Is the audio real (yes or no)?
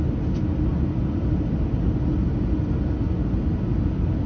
yes